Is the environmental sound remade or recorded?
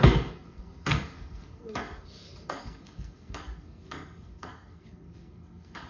remade